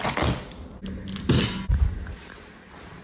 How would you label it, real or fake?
real